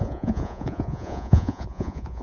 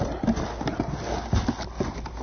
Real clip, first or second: second